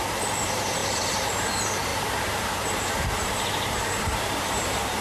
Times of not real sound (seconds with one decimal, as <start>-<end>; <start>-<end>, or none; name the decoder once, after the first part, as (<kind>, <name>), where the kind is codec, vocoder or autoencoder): 0.0-5.0 (vocoder, BigVGAN v2)